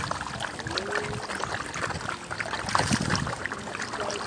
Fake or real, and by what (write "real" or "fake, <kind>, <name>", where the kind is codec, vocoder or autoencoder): real